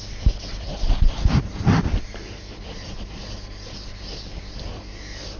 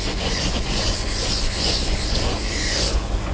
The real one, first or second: first